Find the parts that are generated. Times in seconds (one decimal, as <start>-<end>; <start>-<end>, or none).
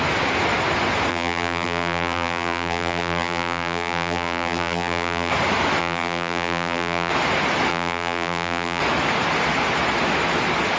1.1-5.3; 5.8-7.1; 7.7-8.8